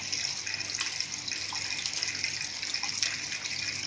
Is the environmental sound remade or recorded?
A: recorded